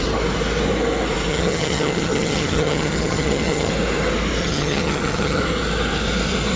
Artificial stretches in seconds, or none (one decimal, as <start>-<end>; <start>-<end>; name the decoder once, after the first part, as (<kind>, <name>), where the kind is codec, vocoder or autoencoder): 1.3-3.7 (vocoder, HiFi-GAN); 4.4-5.4